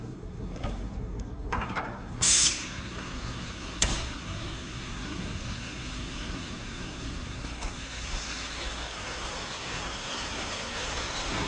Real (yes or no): no